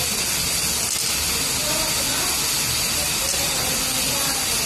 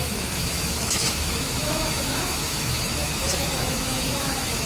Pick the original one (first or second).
first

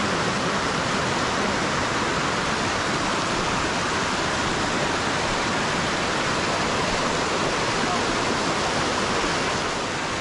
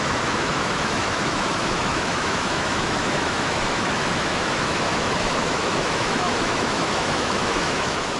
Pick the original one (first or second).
first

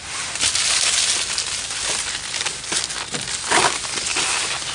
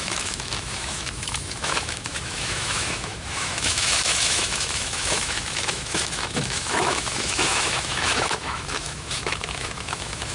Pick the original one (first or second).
first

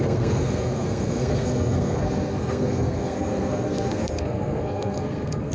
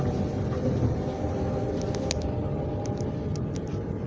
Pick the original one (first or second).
second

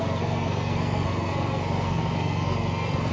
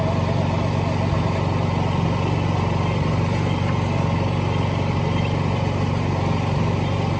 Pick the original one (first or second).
second